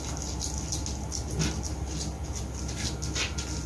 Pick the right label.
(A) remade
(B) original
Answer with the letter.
B